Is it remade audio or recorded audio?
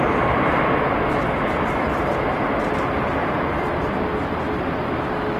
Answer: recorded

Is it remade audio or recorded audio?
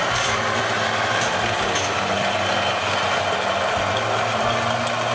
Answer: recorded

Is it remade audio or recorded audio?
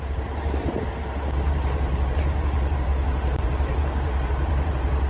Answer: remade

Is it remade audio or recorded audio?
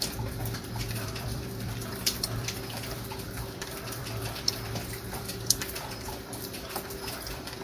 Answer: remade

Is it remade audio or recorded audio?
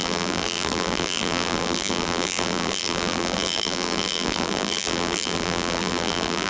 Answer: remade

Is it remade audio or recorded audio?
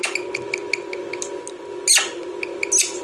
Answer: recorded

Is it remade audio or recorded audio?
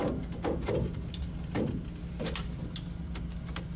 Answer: recorded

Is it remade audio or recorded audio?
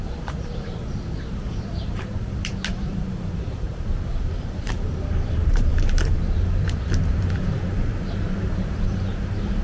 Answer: remade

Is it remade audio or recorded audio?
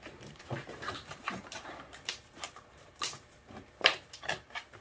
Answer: remade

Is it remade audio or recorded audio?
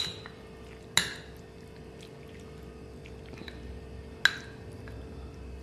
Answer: recorded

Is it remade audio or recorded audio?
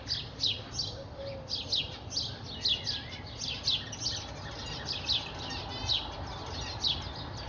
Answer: recorded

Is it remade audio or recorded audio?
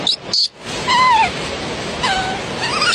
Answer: recorded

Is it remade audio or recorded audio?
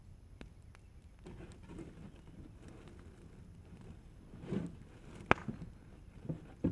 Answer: recorded